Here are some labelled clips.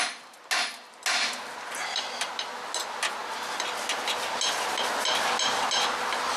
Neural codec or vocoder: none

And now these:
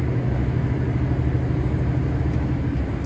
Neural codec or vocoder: none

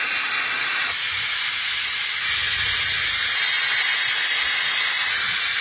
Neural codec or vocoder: none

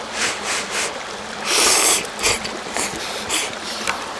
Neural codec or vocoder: none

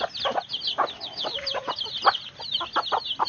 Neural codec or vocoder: none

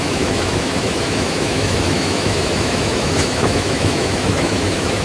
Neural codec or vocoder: autoencoder, DAC-VAE